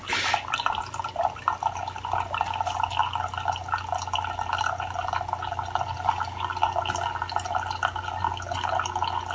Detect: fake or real real